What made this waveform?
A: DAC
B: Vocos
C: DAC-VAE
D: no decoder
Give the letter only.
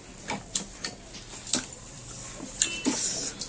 D